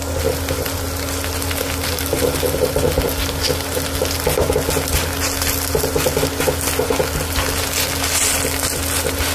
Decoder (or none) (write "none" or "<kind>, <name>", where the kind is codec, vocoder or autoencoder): none